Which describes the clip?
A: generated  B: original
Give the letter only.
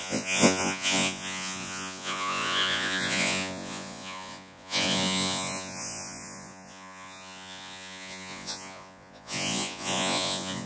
A